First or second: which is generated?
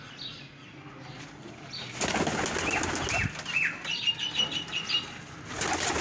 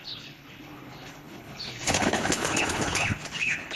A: second